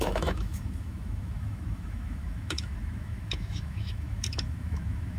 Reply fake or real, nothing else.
fake